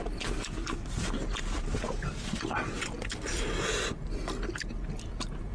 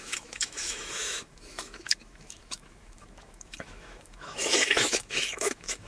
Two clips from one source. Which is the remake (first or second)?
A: second